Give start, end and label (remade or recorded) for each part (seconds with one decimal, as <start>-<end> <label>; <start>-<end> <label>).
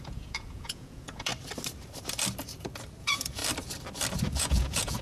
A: 0.0-1.3 remade; 1.3-3.0 recorded; 3.0-3.4 remade; 3.4-4.2 recorded; 4.2-5.0 remade